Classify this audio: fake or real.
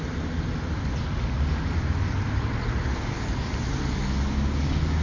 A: real